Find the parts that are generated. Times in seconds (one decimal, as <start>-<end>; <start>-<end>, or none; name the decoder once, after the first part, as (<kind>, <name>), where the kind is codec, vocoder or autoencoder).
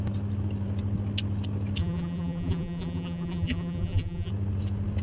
1.8-4.3 (vocoder, BigVGAN v2)